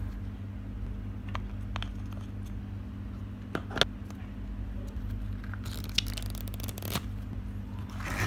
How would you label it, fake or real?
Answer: real